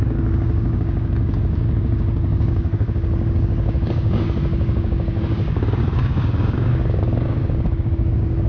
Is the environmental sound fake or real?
fake